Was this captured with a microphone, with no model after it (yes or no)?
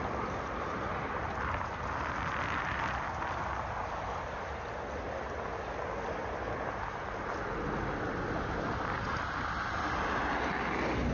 yes